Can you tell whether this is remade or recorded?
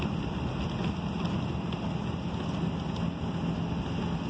recorded